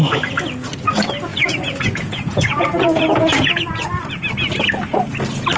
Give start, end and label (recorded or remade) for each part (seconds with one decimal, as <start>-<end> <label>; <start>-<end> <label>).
0.0-1.3 recorded; 1.3-4.0 remade; 4.0-5.6 recorded

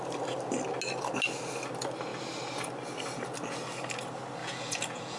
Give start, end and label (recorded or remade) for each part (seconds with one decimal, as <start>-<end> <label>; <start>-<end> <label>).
0.0-4.4 recorded; 4.4-5.2 remade